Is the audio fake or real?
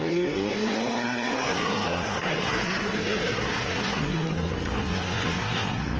fake